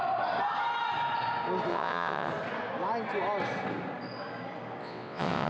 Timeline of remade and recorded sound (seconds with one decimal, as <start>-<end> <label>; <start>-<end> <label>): 0.0-1.7 recorded; 1.7-2.3 remade; 2.3-4.8 recorded; 4.8-5.5 remade